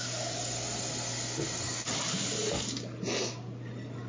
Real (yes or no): yes